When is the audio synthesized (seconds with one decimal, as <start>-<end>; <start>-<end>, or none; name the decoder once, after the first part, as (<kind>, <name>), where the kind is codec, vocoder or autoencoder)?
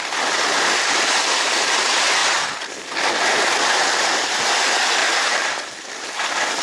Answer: 0.0-1.1 (vocoder, BigVGAN v2); 2.2-3.7; 5.0-5.8